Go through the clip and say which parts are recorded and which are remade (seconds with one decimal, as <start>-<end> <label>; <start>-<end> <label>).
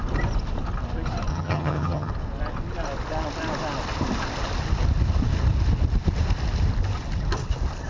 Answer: 0.0-1.3 recorded; 1.3-2.1 remade; 2.1-7.9 recorded